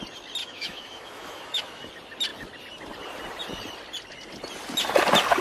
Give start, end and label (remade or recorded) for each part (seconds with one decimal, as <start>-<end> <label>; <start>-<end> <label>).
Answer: 0.0-0.4 recorded; 0.4-1.9 remade; 1.9-5.4 recorded